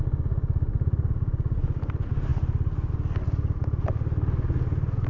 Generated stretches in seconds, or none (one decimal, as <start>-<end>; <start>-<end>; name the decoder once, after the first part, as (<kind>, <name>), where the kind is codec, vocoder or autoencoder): none